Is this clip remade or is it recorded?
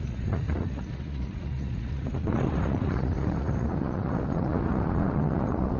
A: remade